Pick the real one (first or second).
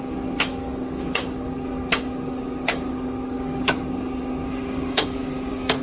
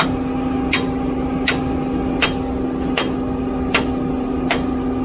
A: second